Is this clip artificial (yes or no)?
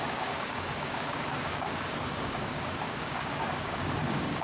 yes